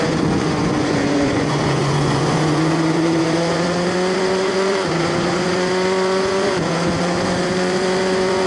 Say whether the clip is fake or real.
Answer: fake